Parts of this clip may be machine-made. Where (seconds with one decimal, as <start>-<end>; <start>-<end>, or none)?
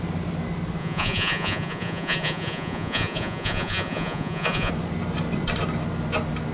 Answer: 0.8-4.7